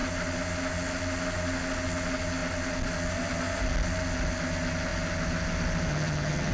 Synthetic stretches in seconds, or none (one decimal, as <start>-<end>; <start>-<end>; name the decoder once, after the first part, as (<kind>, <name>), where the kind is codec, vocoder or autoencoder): 5.9-6.5 (vocoder, HiFi-GAN)